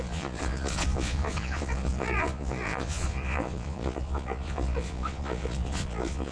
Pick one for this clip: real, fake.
fake